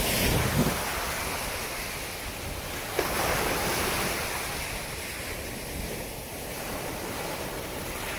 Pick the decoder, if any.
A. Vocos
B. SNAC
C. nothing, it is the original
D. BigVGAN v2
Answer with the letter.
C